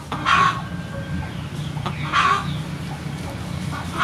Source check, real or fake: real